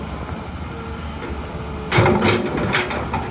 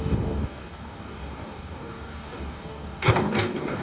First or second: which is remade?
second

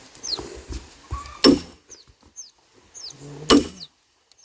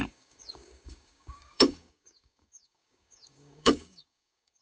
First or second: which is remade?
second